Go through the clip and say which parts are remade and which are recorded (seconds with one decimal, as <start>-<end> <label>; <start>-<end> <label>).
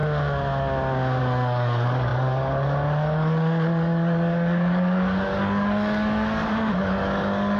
0.0-1.2 recorded; 1.2-7.6 remade